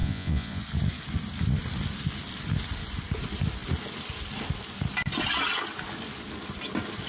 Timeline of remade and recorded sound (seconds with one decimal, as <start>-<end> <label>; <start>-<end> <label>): 0.0-0.6 remade; 0.6-7.1 recorded